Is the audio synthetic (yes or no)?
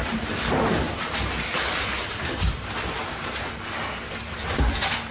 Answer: yes